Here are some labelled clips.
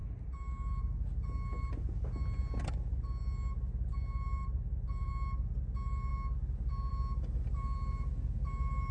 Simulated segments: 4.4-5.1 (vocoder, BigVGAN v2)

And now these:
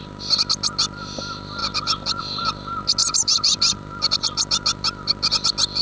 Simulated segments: 1.6-2.2 (vocoder, BigVGAN v2); 3.0-5.3

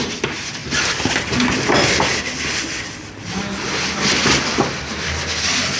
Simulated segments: none

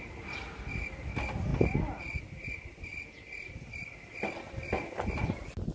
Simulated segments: 2.9-4.1 (vocoder, BigVGAN v2)

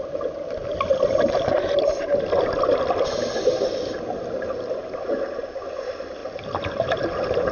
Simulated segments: 0.0-0.9 (vocoder, BigVGAN v2); 5.4-7.5

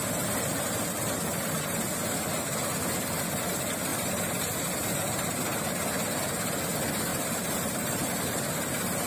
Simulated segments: 0.0-0.7 (vocoder, BigVGAN v2); 3.9-5.4; 7.1-8.2

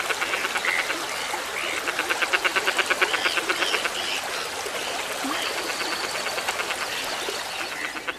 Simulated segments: none

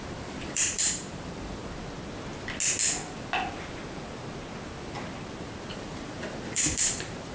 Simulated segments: 0.0-1.6 (vocoder, BigVGAN v2); 5.7-7.3